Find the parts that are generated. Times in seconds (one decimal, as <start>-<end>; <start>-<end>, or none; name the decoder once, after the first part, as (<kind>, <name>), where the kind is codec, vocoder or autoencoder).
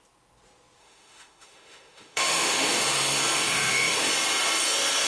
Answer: 0.8-2.8 (autoencoder, DAC-VAE); 3.4-4.1